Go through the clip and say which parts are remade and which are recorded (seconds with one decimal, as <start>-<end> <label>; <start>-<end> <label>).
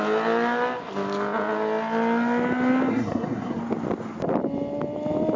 0.0-2.9 recorded; 2.9-3.6 remade; 3.6-5.4 recorded